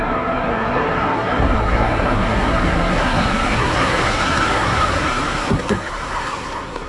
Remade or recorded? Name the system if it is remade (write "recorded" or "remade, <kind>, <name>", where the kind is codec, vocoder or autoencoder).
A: remade, codec, SNAC